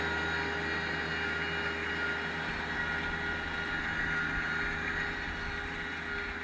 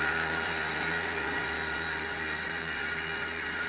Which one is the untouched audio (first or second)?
first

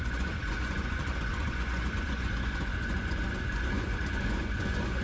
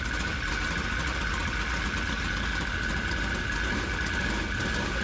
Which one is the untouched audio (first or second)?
second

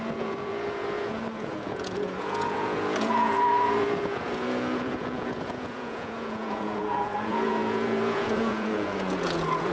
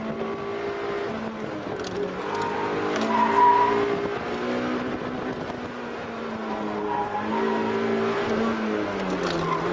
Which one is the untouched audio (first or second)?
second